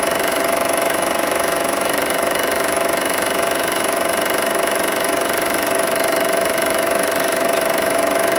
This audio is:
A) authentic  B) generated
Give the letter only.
B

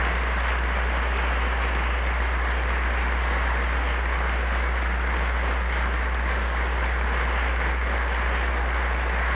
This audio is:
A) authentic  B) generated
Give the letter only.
A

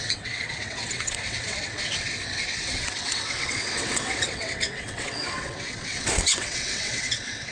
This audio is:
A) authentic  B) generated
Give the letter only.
B